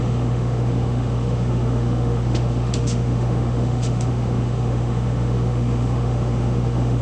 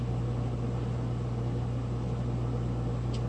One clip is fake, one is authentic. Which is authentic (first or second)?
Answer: second